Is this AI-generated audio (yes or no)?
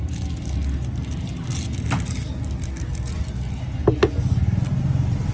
no